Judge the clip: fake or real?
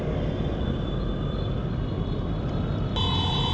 real